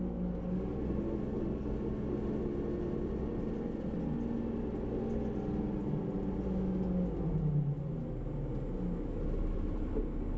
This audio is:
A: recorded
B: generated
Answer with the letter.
A